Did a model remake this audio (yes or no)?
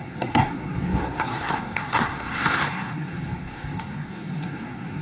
yes